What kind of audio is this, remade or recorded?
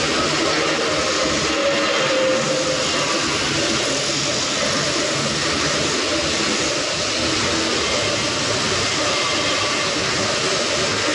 recorded